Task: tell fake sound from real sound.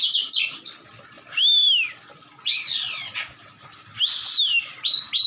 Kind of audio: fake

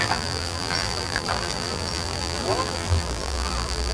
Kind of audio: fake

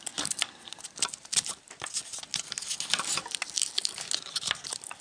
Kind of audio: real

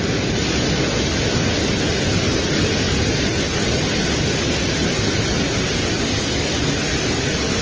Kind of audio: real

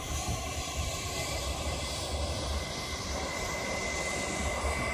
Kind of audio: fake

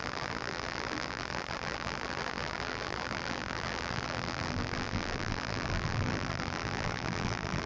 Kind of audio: fake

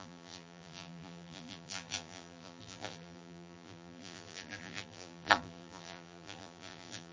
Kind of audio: fake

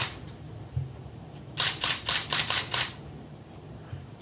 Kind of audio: fake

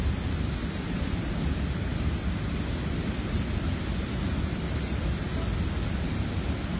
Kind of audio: real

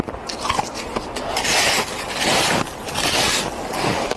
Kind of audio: real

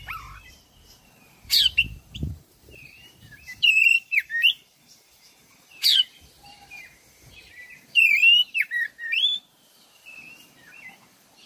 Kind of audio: fake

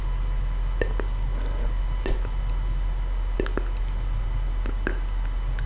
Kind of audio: real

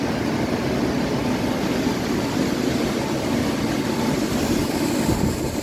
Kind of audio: real